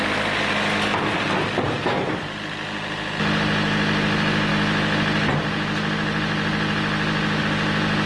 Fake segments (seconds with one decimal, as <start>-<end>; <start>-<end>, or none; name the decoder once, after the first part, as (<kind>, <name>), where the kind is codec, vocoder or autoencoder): none